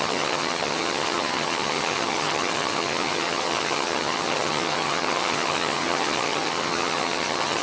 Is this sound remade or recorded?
remade